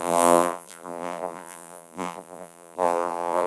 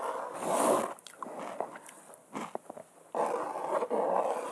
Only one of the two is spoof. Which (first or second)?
first